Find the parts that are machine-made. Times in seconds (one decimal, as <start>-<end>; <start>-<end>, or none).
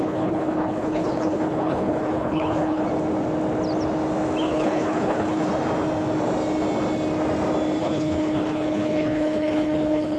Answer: 0.0-2.8; 4.4-5.5; 7.8-10.2